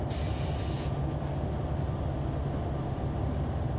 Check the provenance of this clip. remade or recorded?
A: recorded